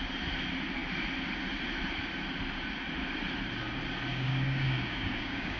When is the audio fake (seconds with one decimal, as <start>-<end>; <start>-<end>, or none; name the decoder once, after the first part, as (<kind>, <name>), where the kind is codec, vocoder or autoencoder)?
4.1-5.6 (codec, DAC)